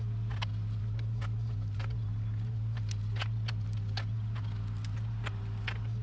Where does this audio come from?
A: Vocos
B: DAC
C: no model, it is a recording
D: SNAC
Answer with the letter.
C